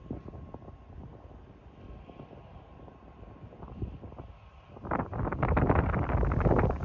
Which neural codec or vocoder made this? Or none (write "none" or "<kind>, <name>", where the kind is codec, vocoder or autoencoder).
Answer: none